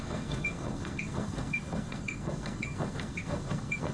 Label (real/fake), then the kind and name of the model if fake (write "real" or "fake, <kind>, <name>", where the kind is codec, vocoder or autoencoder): fake, codec, SNAC